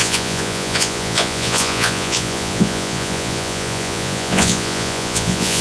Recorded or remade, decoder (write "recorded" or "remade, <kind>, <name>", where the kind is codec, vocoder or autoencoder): remade, vocoder, Vocos